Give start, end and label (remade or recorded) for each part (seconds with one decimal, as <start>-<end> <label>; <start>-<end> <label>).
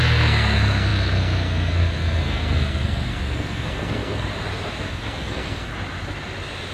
0.0-4.3 remade; 4.3-4.8 recorded; 4.8-5.7 remade; 5.7-6.7 recorded